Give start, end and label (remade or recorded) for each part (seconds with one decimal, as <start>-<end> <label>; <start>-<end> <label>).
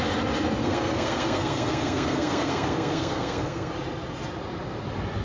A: 0.0-0.6 recorded; 0.6-3.7 remade; 3.7-5.2 recorded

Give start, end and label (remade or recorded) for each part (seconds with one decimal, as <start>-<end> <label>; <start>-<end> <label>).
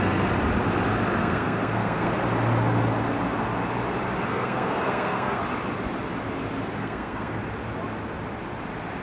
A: 0.0-1.2 recorded; 1.2-2.1 remade; 2.1-4.3 recorded; 4.3-5.4 remade; 5.4-6.8 recorded; 6.8-7.4 remade; 7.4-9.0 recorded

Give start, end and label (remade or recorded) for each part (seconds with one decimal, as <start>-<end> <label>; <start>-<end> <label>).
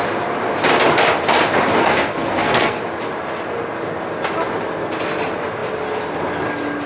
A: 0.0-1.8 recorded; 1.8-2.8 remade; 2.8-6.9 recorded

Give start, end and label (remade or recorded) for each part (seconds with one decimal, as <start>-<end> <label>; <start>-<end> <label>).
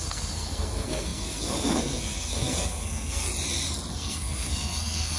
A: 0.0-3.3 remade; 3.3-3.9 recorded; 3.9-5.2 remade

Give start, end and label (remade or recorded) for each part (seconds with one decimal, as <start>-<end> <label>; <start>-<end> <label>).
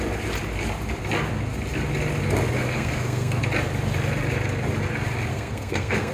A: 0.0-2.6 recorded; 2.6-3.4 remade; 3.4-5.3 recorded; 5.3-6.1 remade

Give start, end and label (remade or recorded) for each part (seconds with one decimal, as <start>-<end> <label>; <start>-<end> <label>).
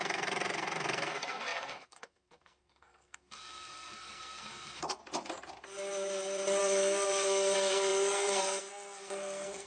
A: 0.0-5.0 remade; 5.0-6.6 recorded; 6.6-9.7 remade